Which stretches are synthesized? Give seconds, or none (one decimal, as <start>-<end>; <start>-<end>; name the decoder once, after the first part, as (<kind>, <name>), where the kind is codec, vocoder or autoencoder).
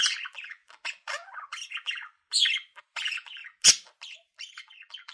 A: 0.0-2.2 (vocoder, BigVGAN v2); 2.8-3.4; 4.6-5.1